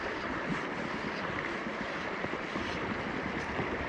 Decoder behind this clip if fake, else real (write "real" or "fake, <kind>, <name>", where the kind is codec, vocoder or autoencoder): real